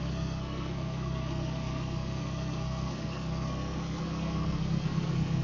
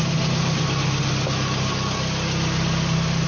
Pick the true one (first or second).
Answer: second